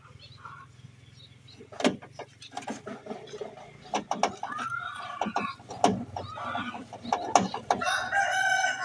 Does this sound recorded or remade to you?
recorded